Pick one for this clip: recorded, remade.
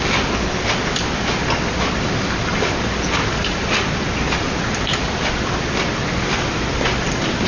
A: recorded